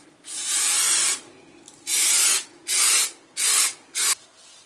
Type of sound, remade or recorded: recorded